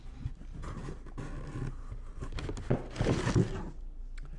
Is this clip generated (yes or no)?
no